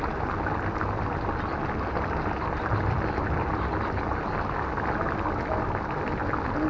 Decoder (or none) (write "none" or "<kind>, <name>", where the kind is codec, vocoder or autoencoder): none